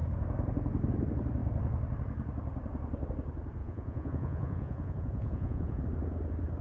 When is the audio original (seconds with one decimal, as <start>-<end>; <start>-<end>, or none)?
0.0-3.6; 5.8-6.6